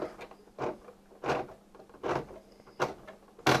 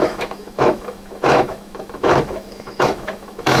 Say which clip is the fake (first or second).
second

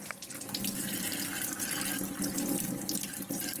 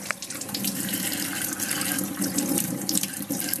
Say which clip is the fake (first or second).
second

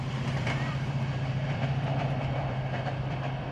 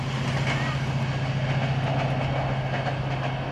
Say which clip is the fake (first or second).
first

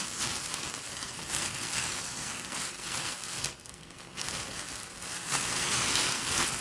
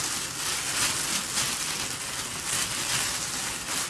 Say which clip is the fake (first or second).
first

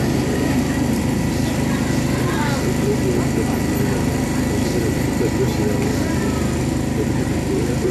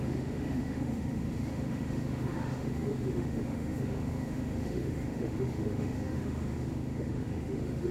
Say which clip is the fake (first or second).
second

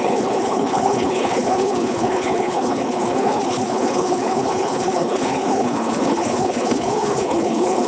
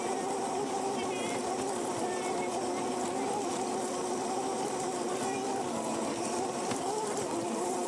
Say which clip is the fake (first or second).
first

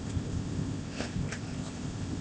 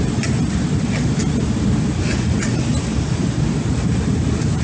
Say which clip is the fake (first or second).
first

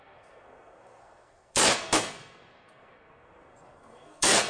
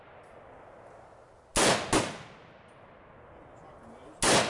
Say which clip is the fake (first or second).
first